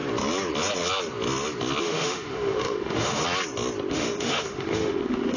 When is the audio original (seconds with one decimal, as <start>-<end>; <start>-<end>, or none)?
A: 0.0-1.8; 3.2-3.9